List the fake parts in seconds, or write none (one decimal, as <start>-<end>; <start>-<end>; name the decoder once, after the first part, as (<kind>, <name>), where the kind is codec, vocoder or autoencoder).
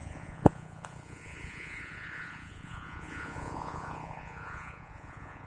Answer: 0.0-5.5 (vocoder, Vocos)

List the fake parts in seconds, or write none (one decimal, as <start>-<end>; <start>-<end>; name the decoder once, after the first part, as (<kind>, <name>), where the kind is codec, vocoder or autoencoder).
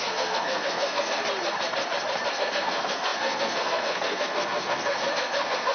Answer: 0.0-1.2 (codec, SNAC); 2.3-5.7